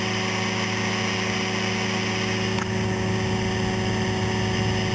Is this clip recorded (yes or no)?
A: yes